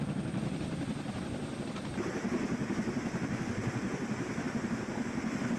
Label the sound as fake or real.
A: real